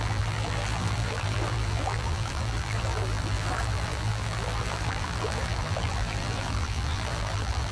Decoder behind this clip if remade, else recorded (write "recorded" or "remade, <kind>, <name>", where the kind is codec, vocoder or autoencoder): remade, vocoder, BigVGAN v2